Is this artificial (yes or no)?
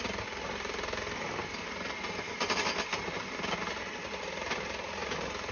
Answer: no